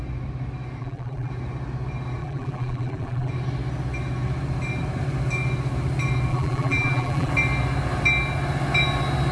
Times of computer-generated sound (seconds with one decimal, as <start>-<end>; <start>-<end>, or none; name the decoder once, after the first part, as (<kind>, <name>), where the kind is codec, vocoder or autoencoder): 0.8-1.3 (vocoder, BigVGAN v2); 2.2-3.3; 6.3-7.3